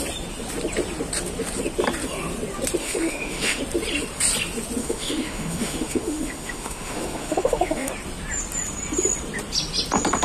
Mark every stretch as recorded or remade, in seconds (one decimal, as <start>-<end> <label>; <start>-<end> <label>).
0.0-2.8 recorded; 2.8-3.6 remade; 3.6-4.8 recorded; 4.8-7.9 remade; 7.9-10.2 recorded